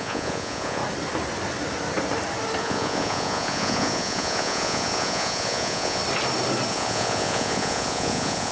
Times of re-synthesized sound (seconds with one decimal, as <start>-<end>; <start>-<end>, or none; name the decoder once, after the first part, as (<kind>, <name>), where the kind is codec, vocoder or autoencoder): 0.0-0.8 (vocoder, Vocos); 2.6-6.0; 6.7-8.5